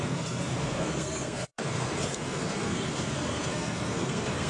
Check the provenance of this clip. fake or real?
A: fake